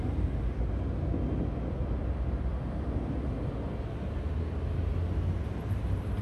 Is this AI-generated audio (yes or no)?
no